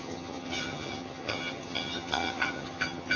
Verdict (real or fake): fake